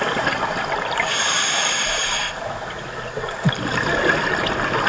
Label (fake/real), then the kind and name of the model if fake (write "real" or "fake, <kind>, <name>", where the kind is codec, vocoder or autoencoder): real